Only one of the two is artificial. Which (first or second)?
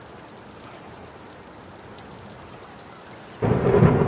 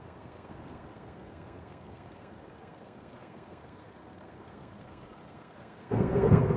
second